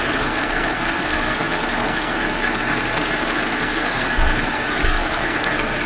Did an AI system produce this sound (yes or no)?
yes